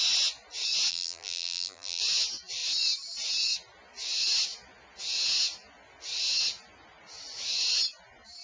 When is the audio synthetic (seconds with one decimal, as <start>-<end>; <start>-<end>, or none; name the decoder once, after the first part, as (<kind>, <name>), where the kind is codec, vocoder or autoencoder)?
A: 0.9-2.0 (vocoder, BigVGAN v2)